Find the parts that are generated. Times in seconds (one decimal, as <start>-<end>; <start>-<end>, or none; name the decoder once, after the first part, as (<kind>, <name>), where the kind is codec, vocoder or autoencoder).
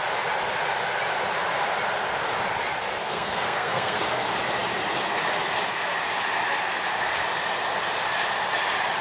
3.1-4.0 (codec, SNAC)